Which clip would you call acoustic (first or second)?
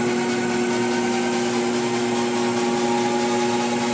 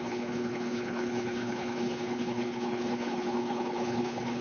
first